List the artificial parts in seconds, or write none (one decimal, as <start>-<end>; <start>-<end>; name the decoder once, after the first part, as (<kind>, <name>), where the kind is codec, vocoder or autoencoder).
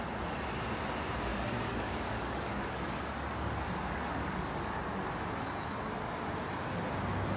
1.3-5.1 (codec, DAC)